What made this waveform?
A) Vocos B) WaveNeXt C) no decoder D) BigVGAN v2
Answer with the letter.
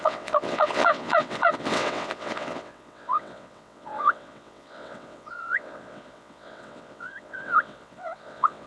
B